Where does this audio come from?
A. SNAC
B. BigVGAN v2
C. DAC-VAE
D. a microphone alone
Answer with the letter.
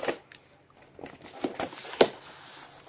D